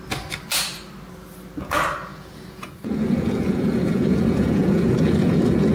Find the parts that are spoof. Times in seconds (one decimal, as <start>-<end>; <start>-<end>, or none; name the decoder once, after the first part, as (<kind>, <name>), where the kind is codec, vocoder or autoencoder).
2.1-5.7 (vocoder, Vocos)